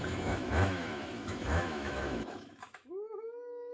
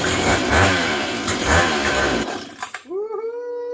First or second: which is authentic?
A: second